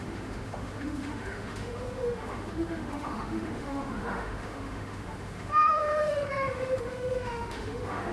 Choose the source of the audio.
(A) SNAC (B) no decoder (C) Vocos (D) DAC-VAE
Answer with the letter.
D